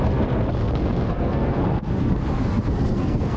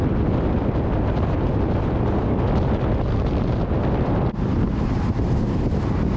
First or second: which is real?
second